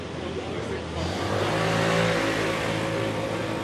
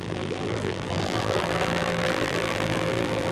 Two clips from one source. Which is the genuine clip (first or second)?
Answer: first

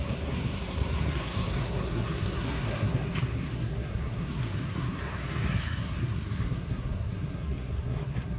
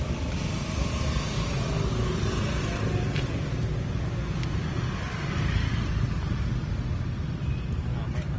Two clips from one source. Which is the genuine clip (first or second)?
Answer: second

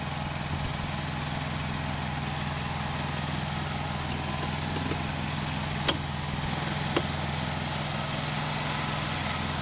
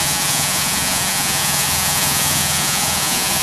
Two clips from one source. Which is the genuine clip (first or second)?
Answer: first